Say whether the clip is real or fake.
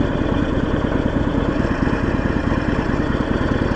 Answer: fake